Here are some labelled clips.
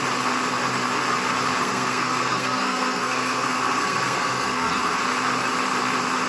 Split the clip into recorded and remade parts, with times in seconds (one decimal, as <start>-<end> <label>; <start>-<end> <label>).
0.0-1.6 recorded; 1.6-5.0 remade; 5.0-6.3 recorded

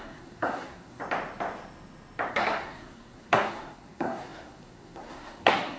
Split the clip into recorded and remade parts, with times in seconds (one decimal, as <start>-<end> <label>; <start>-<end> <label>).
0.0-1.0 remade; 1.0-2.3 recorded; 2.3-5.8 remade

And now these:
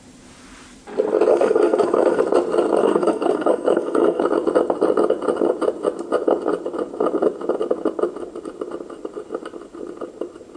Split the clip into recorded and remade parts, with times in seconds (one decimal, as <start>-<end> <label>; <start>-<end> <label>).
0.0-1.3 recorded; 1.3-2.2 remade; 2.2-2.8 recorded; 2.8-4.2 remade; 4.2-10.6 recorded

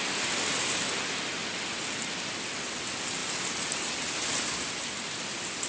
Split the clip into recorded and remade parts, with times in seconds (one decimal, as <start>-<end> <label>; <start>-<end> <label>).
0.0-5.7 recorded

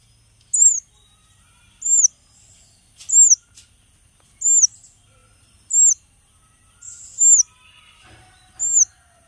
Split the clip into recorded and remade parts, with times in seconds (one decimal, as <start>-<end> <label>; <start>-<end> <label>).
0.0-9.3 recorded

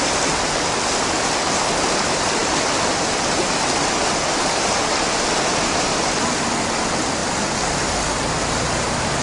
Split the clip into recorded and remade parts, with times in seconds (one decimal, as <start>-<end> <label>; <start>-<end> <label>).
0.0-9.2 recorded